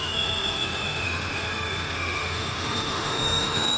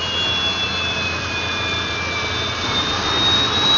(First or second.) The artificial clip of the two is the first